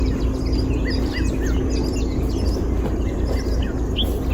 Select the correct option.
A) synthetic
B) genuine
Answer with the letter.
B